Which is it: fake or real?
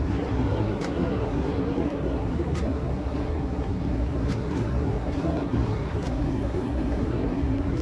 fake